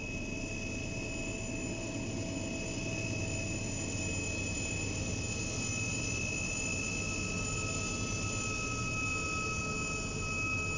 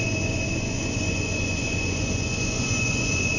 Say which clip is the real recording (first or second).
first